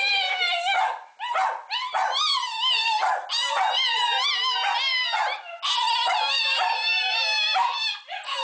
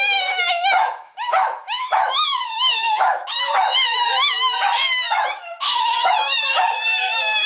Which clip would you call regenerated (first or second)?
second